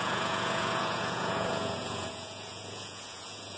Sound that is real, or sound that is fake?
fake